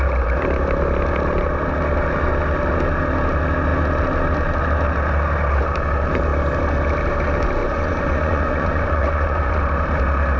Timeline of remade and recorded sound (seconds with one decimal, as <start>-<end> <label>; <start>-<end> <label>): 0.0-7.6 recorded; 7.6-9.6 remade; 9.6-10.4 recorded